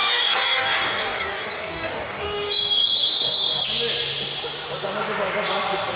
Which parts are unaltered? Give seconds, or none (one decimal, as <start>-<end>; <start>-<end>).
3.6-6.0